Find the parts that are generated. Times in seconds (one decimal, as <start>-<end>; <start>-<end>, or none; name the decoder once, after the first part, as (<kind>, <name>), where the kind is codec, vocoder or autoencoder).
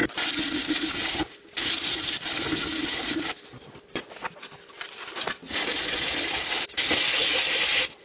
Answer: none